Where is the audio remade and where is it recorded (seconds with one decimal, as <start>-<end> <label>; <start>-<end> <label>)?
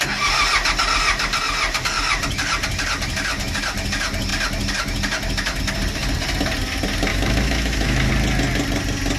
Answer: 0.0-7.1 recorded; 7.1-8.1 remade; 8.1-9.2 recorded